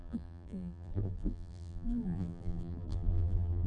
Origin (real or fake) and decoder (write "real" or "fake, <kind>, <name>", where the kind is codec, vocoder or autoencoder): fake, vocoder, BigVGAN v2